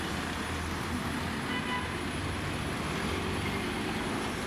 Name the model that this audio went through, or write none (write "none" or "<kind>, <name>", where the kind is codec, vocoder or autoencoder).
none